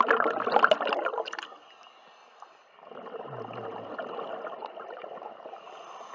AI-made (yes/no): no